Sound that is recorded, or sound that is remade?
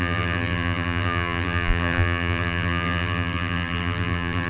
remade